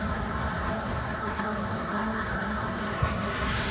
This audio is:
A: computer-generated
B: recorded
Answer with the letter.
A